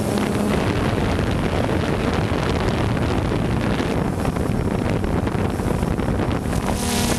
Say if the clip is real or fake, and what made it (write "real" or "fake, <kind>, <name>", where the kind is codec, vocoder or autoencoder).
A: real